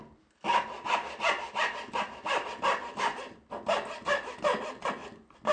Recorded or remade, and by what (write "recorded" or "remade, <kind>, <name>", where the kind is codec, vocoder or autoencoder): recorded